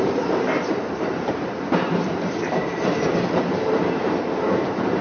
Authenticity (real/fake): fake